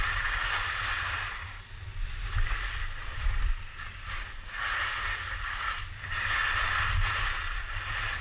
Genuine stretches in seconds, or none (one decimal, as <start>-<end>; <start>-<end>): 0.0-8.2